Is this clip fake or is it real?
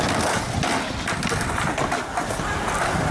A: real